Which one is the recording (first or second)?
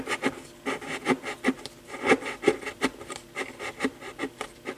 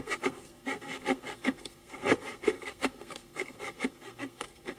first